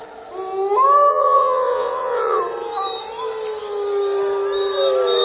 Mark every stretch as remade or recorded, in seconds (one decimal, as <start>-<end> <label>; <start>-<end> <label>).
0.0-1.1 recorded; 1.1-2.4 remade; 2.4-5.2 recorded